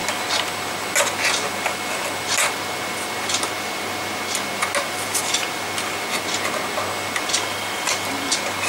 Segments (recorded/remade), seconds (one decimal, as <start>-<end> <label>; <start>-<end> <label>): 0.0-8.7 recorded